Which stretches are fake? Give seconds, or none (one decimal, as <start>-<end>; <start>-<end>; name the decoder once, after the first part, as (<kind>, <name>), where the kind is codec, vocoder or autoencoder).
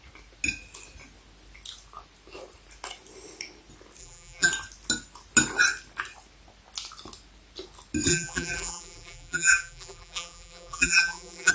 4.0-4.5 (vocoder, BigVGAN v2); 8.1-11.5